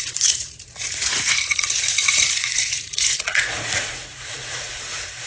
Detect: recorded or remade remade